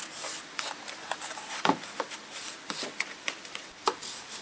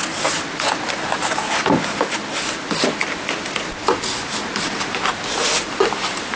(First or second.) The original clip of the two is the second